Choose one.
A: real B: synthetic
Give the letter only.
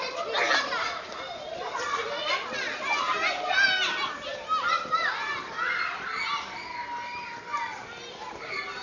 A